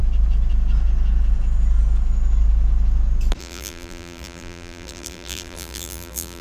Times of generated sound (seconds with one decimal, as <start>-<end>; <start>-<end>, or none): 3.4-6.4